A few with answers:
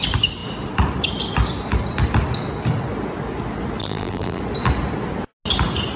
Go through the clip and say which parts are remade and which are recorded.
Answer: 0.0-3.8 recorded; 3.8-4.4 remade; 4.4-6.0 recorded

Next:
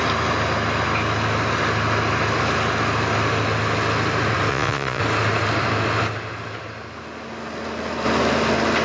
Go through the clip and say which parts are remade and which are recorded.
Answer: 0.0-4.5 recorded; 4.5-5.0 remade; 5.0-8.8 recorded

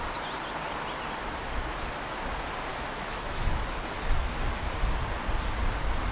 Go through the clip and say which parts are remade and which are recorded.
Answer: 0.0-2.7 recorded; 2.7-3.5 remade; 3.5-6.1 recorded

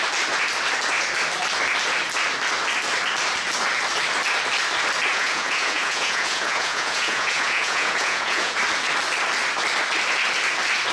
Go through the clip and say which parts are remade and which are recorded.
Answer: 0.0-5.1 recorded; 5.1-8.6 remade; 8.6-10.9 recorded

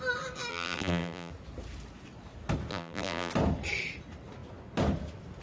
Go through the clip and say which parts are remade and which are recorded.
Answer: 0.0-0.5 recorded; 0.5-1.3 remade; 1.3-2.7 recorded; 2.7-3.3 remade; 3.3-5.4 recorded

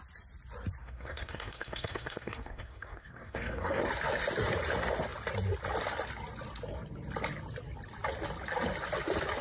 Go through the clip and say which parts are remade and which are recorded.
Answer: 0.0-0.8 recorded; 0.8-3.8 remade; 3.8-9.4 recorded